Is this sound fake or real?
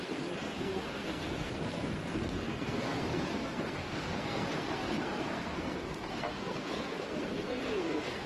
fake